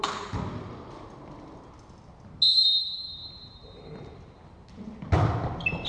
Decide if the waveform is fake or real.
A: real